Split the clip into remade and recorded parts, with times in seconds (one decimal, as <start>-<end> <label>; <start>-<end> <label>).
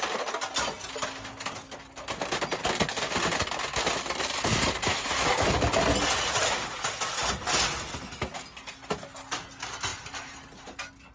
0.0-4.9 recorded; 4.9-5.5 remade; 5.5-11.1 recorded